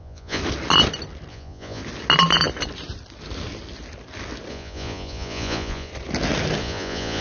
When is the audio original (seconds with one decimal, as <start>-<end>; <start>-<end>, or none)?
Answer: 0.4-1.3; 1.8-4.5; 5.9-6.6